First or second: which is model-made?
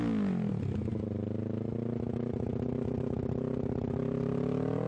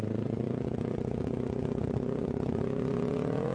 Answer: second